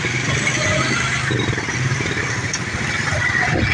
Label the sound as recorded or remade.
recorded